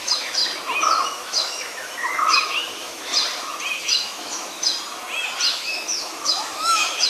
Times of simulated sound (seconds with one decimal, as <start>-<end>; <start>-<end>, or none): 0.0-0.4; 1.1-3.1; 3.7-4.7; 5.5-7.1

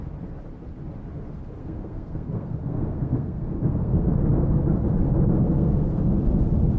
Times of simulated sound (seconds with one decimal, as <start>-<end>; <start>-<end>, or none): 1.6-4.1; 4.9-6.0